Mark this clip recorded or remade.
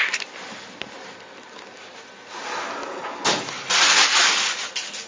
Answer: recorded